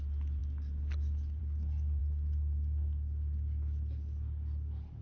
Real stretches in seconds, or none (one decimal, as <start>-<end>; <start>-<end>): 0.0-5.0